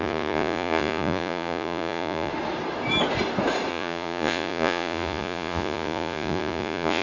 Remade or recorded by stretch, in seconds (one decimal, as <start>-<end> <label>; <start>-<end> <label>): 0.0-2.3 remade; 2.3-3.7 recorded; 3.7-7.0 remade

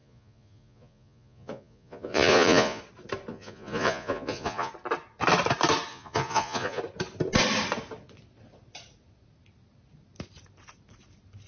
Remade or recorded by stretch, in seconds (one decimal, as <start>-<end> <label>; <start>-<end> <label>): 0.0-2.8 remade; 2.8-3.3 recorded; 3.3-4.7 remade; 4.7-5.9 recorded; 5.9-6.8 remade; 6.8-11.5 recorded

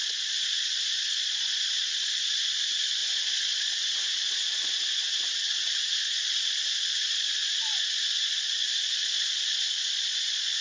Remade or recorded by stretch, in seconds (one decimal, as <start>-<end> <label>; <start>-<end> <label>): 0.0-10.6 remade

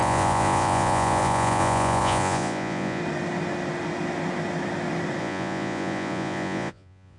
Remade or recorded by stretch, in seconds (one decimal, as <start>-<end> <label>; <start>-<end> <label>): 0.0-3.0 remade; 3.0-5.2 recorded; 5.2-7.2 remade

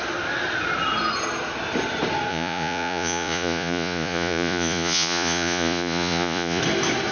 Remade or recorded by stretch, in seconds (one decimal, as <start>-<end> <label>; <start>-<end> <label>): 0.0-2.3 recorded; 2.3-6.6 remade; 6.6-7.1 recorded

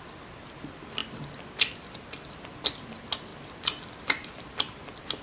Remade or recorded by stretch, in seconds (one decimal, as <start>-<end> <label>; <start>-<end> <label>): 0.0-5.2 recorded

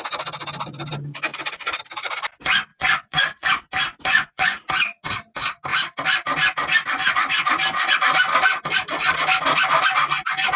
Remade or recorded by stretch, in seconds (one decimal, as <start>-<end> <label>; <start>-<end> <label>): 0.0-1.3 recorded; 1.3-1.8 remade; 1.8-2.7 recorded; 2.7-3.5 remade; 3.5-4.1 recorded; 4.1-4.6 remade; 4.6-10.6 recorded

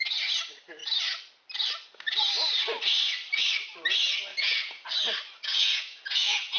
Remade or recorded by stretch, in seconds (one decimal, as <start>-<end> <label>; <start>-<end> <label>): 0.0-4.3 recorded; 4.3-4.9 remade; 4.9-5.5 recorded; 5.5-6.6 remade